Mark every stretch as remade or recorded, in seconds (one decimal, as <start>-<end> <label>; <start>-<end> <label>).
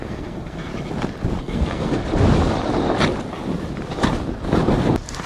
0.0-0.7 remade; 0.7-1.4 recorded; 1.4-2.0 remade; 2.0-5.3 recorded